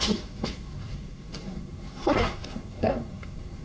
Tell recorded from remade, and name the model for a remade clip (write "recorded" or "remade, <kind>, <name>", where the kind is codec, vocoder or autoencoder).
remade, codec, SNAC